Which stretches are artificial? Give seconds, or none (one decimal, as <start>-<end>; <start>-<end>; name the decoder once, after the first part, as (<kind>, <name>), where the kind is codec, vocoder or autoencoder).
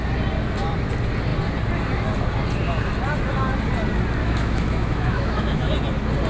4.2-5.7 (autoencoder, DAC-VAE)